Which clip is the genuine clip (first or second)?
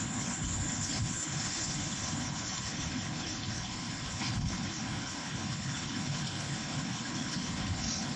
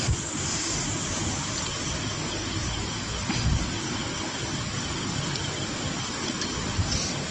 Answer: second